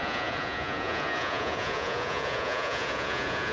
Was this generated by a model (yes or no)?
yes